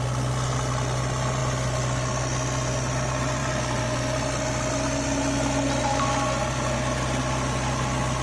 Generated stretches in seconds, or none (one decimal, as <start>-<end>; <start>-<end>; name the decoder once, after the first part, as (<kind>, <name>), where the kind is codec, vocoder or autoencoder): none